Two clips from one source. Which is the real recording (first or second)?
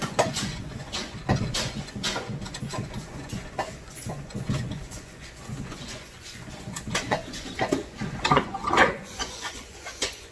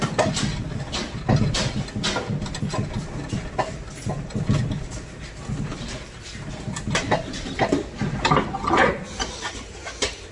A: second